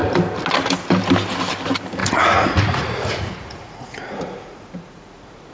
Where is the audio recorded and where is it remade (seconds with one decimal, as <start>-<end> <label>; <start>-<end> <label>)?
0.0-2.0 recorded; 2.0-5.5 remade